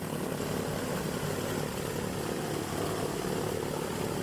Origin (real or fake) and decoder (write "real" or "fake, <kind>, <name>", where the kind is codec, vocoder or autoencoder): real